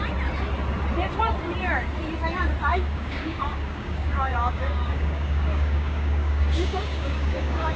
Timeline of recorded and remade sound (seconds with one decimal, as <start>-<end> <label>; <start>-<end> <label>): 0.0-2.7 recorded; 2.7-7.8 remade

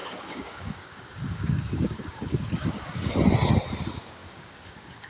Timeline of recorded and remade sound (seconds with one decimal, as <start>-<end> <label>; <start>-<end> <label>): 0.0-3.1 remade; 3.1-4.2 recorded; 4.2-5.1 remade

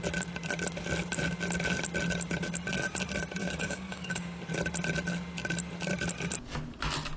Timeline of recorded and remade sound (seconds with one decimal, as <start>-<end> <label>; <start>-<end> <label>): 0.0-3.4 recorded; 3.4-4.4 remade; 4.4-7.2 recorded

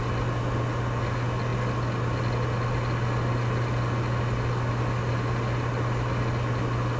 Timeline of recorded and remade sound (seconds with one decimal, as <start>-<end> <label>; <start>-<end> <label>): 0.0-7.0 recorded

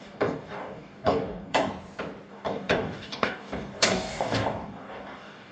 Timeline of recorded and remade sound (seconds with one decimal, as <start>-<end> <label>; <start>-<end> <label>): 0.0-1.7 remade; 1.7-2.3 recorded; 2.3-5.5 remade

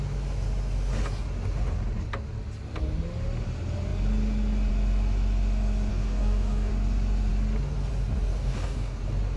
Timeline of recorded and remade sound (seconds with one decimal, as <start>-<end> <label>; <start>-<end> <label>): 0.0-5.9 recorded; 5.9-6.7 remade; 6.7-8.4 recorded; 8.4-9.0 remade; 9.0-9.4 recorded